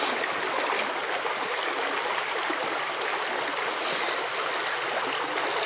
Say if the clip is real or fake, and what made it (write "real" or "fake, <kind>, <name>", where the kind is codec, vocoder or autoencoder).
real